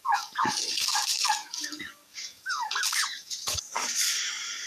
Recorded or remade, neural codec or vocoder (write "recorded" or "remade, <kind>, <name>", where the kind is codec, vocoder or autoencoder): remade, codec, DAC